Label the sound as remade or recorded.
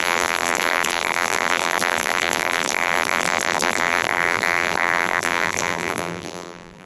remade